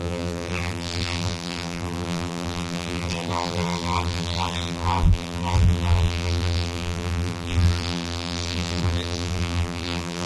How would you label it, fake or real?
fake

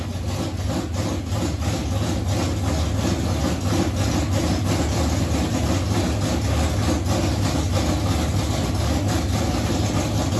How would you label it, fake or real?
real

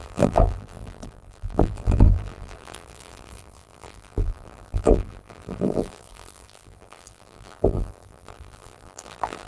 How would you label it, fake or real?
fake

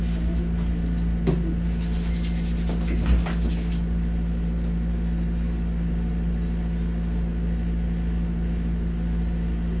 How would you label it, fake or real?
real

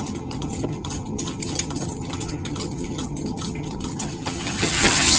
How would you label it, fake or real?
fake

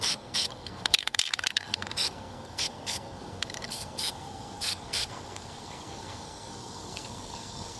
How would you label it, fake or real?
fake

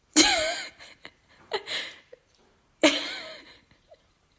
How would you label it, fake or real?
fake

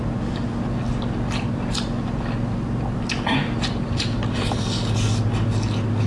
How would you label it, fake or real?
real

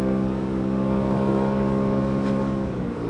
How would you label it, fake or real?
fake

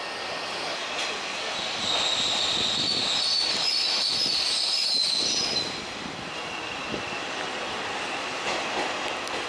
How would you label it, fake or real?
real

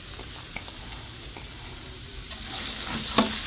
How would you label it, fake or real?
real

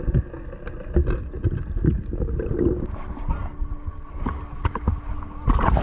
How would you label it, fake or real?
real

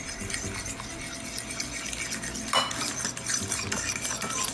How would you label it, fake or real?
real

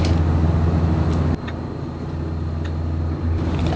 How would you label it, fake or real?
real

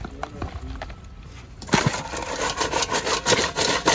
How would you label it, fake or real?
real